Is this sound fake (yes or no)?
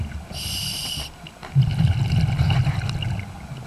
no